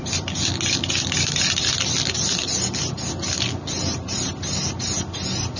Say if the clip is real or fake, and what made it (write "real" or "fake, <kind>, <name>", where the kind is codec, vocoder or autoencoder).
real